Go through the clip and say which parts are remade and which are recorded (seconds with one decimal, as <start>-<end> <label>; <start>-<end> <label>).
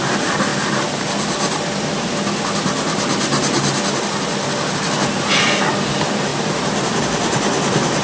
0.0-8.0 recorded